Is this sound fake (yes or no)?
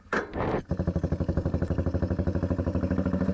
yes